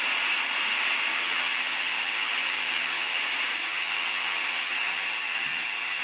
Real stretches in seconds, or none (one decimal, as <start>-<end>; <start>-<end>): 0.0-1.1; 3.2-3.6